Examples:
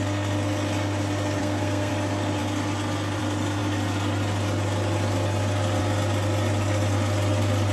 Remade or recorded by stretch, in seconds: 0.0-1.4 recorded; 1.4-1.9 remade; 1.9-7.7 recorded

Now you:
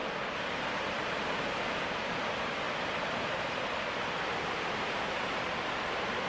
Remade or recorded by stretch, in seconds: 0.0-2.0 recorded; 2.0-4.8 remade; 4.8-6.3 recorded